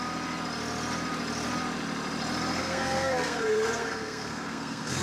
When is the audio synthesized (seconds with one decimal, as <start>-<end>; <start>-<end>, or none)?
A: 2.6-5.0

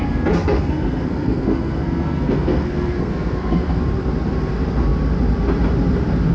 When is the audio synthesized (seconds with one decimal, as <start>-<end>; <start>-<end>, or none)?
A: 0.0-3.8

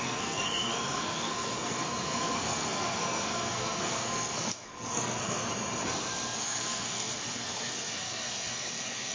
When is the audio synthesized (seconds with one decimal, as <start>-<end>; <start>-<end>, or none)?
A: 0.0-5.4; 6.4-9.1

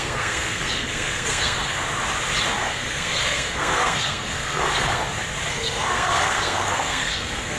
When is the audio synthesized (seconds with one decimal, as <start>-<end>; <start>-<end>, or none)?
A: 0.0-1.8; 2.6-5.0; 5.5-7.6

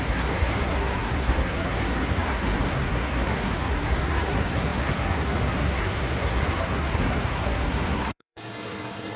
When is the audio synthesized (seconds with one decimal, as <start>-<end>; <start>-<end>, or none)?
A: 0.0-9.2

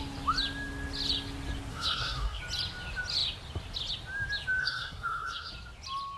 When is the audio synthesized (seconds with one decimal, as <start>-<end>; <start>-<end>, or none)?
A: 1.7-2.4; 4.6-5.5

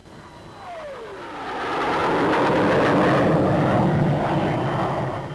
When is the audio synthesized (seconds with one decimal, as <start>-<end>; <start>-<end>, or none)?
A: none

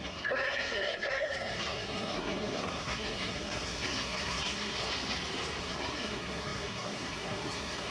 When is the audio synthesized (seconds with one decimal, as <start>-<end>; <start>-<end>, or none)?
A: 0.0-4.9; 5.6-7.9